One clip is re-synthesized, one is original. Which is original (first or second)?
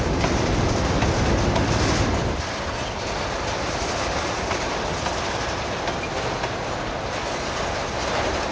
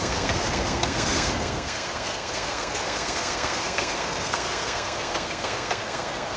first